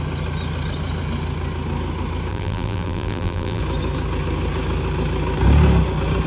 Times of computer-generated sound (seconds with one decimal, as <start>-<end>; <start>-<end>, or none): 2.3-3.6